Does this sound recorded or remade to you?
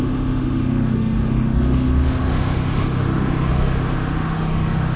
remade